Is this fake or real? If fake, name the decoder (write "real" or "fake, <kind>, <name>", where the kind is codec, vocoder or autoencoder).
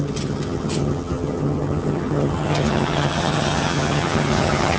fake, vocoder, HiFi-GAN